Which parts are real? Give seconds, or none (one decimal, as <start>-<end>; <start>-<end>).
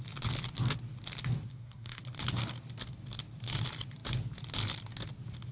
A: 0.0-1.5; 2.0-5.5